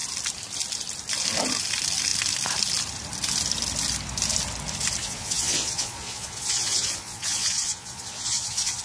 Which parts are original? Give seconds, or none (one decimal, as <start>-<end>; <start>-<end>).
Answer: 0.0-5.0

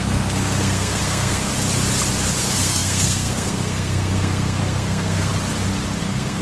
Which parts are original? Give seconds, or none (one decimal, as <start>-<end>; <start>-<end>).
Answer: 1.5-2.4; 5.3-6.0

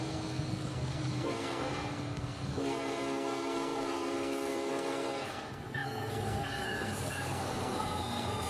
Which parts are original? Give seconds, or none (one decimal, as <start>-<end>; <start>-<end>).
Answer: none

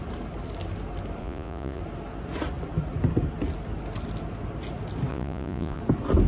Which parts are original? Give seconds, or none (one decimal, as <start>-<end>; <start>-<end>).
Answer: 0.0-1.2; 1.8-5.1; 5.8-6.3

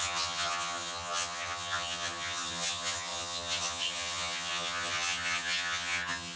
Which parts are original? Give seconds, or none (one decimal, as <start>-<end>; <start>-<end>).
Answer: none

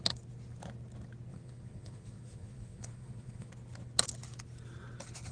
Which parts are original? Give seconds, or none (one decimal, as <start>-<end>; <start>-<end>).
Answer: 0.0-1.3; 3.5-5.3

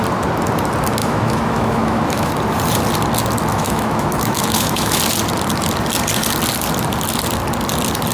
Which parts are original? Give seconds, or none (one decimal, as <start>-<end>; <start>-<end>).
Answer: 0.0-1.0; 2.3-3.5; 5.0-8.1